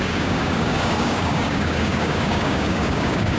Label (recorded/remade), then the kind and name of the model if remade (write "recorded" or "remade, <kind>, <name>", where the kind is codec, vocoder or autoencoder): remade, codec, DAC